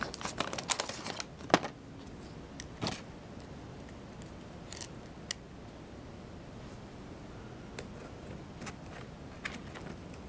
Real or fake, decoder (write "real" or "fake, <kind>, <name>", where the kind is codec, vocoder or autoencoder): real